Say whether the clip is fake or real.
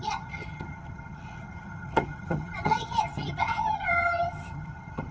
fake